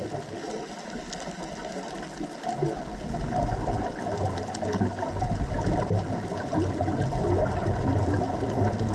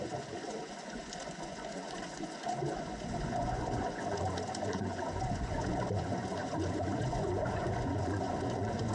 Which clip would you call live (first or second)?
first